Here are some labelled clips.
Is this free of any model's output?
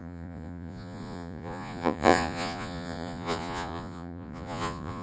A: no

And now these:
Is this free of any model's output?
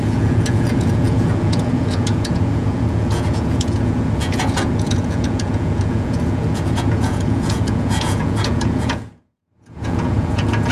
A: no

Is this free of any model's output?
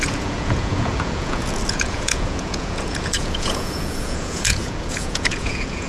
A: no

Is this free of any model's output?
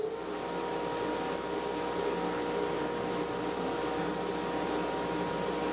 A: yes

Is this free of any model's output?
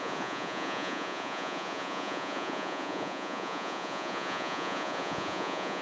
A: no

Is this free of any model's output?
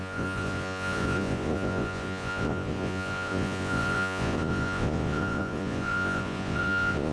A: no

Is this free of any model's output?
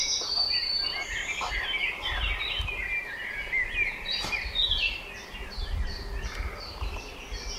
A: yes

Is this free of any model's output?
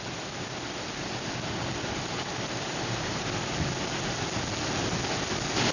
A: yes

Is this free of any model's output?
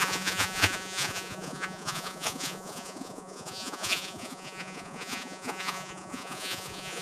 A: no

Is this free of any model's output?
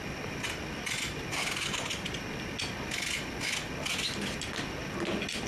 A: yes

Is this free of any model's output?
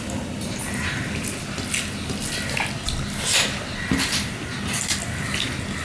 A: yes